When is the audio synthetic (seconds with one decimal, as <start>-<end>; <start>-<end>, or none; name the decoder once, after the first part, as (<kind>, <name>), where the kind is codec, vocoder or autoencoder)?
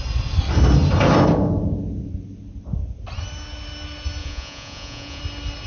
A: 4.2-5.2 (vocoder, Vocos)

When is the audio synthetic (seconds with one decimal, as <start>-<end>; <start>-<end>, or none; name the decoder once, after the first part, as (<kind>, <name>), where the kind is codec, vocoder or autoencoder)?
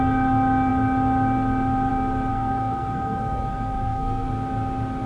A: 2.3-4.3 (codec, SNAC)